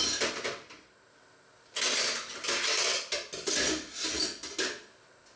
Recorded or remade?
recorded